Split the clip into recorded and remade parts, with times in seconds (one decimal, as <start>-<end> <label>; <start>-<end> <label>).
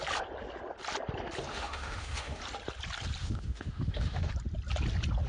0.0-1.5 recorded; 1.5-2.4 remade; 2.4-3.2 recorded; 3.2-4.3 remade; 4.3-5.3 recorded